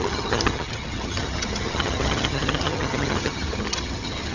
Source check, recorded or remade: remade